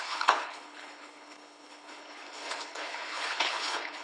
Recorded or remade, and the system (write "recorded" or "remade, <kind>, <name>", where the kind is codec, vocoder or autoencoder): remade, codec, HILCodec